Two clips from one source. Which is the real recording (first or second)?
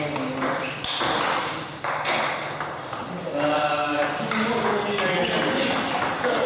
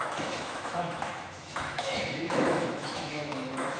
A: first